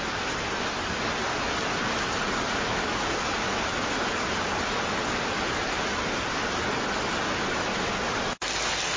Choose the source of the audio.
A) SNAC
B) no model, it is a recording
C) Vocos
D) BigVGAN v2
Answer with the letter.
B